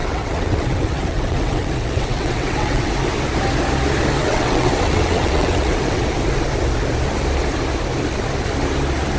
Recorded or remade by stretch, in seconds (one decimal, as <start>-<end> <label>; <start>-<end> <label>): 0.0-2.9 remade; 2.9-4.2 recorded; 4.2-6.0 remade; 6.0-9.2 recorded